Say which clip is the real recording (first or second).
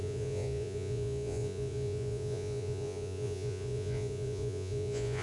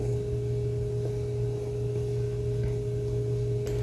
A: second